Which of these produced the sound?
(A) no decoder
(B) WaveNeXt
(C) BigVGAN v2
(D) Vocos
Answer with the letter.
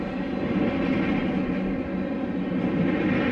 A